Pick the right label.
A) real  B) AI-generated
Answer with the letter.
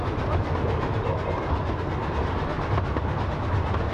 A